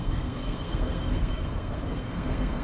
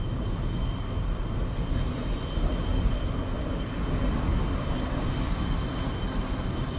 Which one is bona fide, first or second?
second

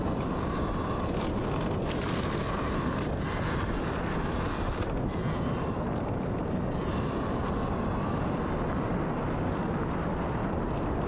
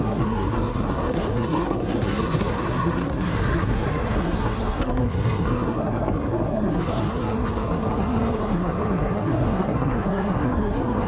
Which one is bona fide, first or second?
first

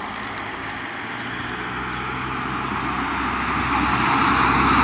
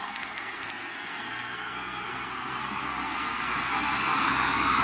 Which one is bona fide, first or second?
first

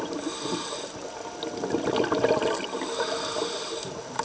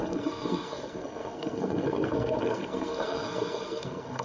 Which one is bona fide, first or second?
first